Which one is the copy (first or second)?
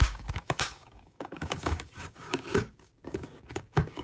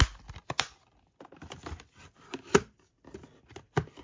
first